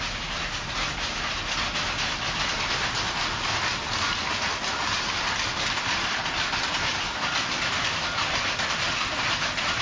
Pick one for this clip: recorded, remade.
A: recorded